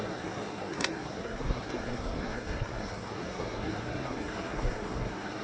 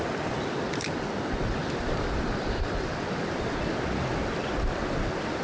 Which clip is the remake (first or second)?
first